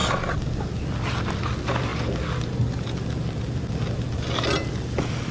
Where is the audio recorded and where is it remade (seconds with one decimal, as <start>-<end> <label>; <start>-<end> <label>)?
0.0-5.3 recorded